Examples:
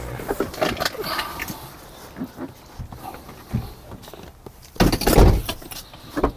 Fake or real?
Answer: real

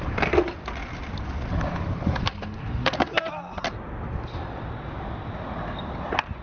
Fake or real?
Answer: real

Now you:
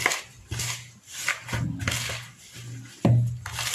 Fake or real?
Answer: real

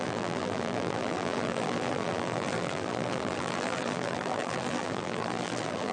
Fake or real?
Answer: fake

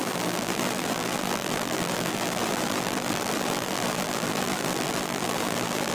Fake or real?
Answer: fake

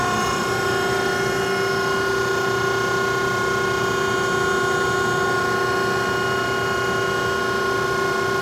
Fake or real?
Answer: real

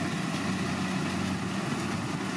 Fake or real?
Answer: real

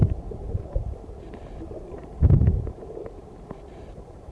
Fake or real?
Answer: fake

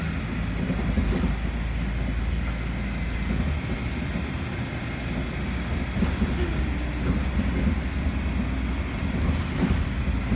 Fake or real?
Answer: real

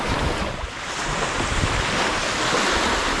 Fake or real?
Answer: fake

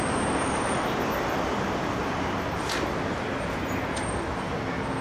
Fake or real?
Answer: real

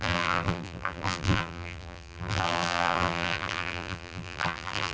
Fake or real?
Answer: fake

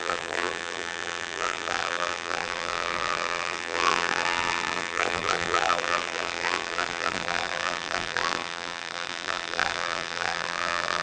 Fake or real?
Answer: fake